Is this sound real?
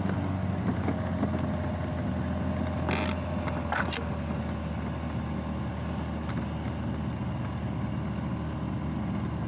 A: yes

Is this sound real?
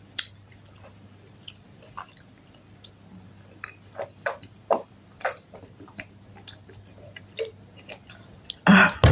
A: yes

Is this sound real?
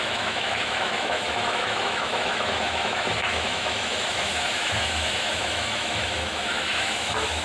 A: no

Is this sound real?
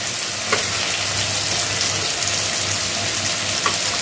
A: yes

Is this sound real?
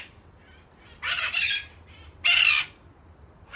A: yes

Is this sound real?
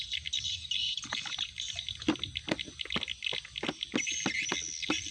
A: yes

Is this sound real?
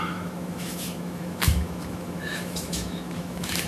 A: no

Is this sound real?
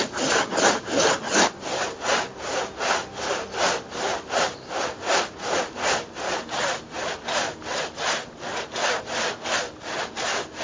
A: yes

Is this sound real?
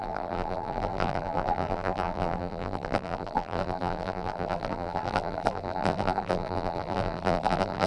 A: no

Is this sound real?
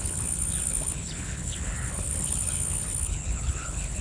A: no